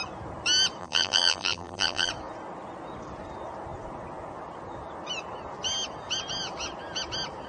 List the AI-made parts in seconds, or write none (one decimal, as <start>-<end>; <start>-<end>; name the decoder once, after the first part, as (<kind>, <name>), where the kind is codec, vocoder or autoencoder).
0.8-2.1 (vocoder, BigVGAN v2)